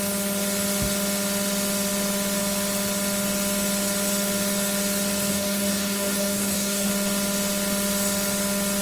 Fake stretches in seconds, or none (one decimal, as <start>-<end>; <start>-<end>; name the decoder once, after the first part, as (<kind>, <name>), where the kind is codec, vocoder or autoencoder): 5.3-6.9 (codec, DAC)